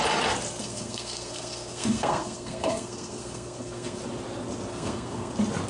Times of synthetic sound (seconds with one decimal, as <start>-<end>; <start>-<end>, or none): 0.6-4.0; 4.7-5.3